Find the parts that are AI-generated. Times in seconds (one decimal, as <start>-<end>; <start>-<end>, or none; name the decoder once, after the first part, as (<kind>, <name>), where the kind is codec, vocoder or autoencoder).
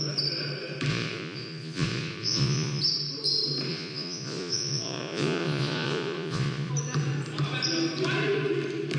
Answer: 0.9-2.8 (vocoder, Vocos); 3.7-6.7